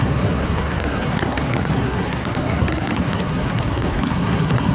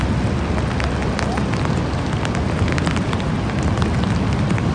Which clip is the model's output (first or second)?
first